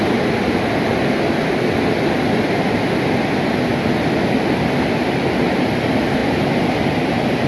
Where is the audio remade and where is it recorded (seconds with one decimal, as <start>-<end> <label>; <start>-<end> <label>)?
0.0-7.5 recorded